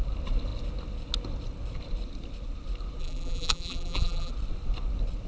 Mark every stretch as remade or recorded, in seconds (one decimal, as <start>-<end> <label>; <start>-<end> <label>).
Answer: 0.0-3.0 recorded; 3.0-4.3 remade; 4.3-5.3 recorded